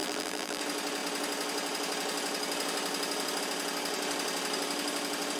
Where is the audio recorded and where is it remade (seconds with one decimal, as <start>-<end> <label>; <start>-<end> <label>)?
0.0-0.6 remade; 0.6-5.4 recorded